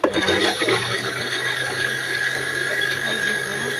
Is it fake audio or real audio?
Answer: fake